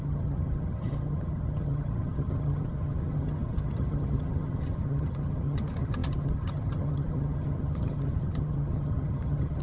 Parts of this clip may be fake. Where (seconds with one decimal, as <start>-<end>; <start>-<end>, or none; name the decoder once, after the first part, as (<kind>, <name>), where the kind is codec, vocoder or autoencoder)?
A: 0.0-9.6 (vocoder, HiFi-GAN)